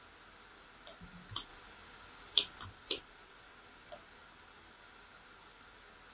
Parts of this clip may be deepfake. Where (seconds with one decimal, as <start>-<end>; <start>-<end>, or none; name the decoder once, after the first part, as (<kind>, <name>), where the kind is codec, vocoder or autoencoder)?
none